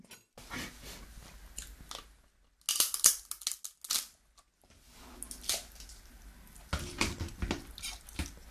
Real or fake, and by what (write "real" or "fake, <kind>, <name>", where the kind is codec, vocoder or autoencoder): real